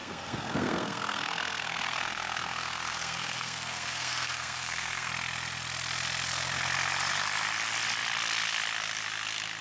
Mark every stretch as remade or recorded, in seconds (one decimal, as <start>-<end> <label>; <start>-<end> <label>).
0.0-5.1 remade; 5.1-9.6 recorded